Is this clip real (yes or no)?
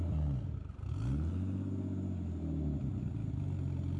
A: yes